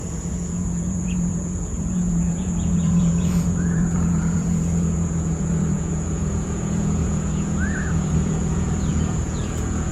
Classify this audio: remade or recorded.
remade